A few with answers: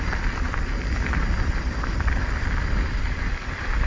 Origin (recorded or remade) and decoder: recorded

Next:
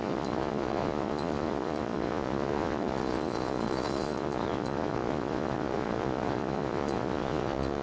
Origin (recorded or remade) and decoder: remade, vocoder, Vocos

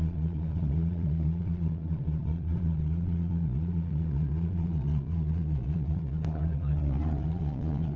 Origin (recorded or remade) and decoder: remade, vocoder, Vocos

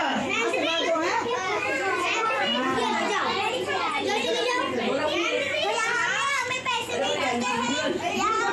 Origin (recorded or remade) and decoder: remade, vocoder, Vocos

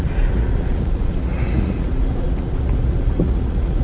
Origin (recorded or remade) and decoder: remade, vocoder, Vocos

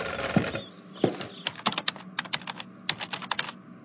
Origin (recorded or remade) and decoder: recorded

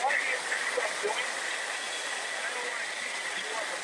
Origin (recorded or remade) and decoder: recorded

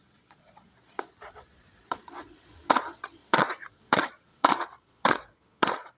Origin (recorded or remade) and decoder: remade, vocoder, Vocos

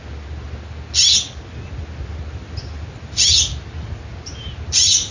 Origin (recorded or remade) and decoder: recorded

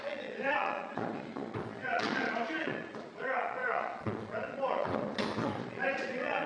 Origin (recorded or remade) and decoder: remade, vocoder, Vocos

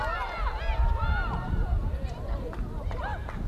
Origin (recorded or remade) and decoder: recorded